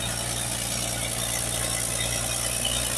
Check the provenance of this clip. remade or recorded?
recorded